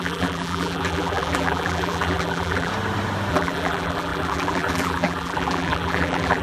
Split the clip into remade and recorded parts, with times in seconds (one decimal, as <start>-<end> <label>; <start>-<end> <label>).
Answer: 0.0-2.7 remade; 2.7-3.3 recorded; 3.3-6.4 remade